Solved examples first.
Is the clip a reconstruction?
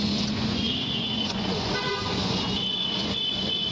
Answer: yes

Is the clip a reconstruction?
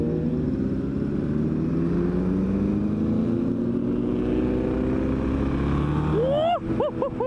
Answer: no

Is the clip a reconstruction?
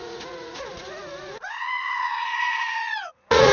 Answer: yes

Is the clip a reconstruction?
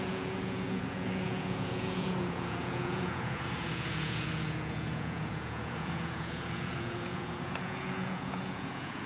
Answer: yes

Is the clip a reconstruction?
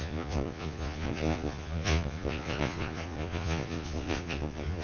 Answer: yes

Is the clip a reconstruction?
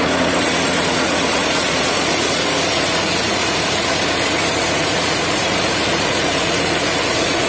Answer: yes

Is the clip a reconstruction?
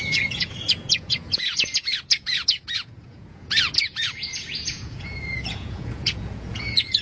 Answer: yes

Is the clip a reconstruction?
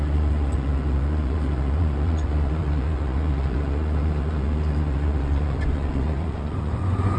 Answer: yes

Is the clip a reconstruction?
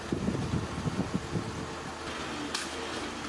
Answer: no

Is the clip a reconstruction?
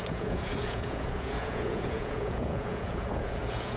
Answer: yes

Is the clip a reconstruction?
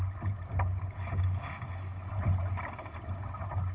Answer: no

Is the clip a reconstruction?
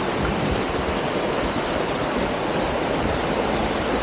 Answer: no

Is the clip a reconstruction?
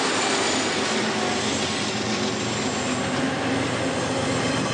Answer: no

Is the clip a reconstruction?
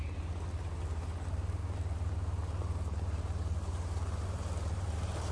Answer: no